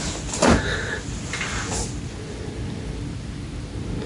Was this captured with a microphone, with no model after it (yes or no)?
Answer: yes